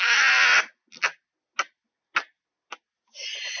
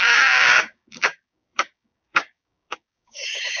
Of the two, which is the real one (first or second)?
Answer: first